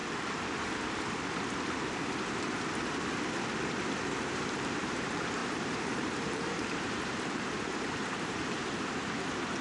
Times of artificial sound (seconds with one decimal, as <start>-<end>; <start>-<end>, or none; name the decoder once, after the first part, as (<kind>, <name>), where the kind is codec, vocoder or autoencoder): 4.2-9.6 (vocoder, BigVGAN v2)